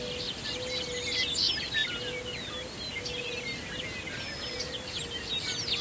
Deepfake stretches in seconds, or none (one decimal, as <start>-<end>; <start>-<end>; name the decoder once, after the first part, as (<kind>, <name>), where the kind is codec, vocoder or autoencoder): none